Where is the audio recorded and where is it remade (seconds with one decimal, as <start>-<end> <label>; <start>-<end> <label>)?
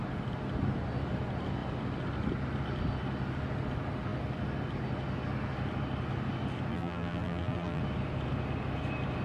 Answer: 0.0-6.7 recorded; 6.7-7.8 remade; 7.8-9.2 recorded